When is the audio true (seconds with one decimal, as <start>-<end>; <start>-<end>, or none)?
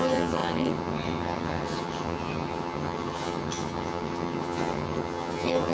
none